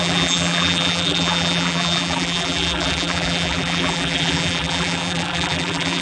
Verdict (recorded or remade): remade